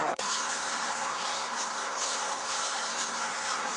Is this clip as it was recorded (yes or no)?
no